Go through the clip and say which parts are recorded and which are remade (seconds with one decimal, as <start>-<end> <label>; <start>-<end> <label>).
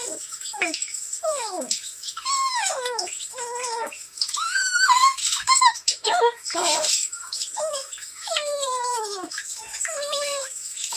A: 0.0-11.0 remade